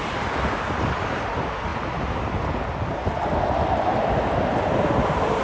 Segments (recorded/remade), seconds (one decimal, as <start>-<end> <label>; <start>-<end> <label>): 0.0-5.4 recorded